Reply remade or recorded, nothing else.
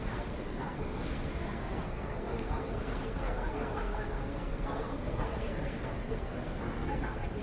remade